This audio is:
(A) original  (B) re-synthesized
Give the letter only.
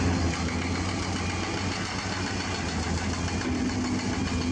A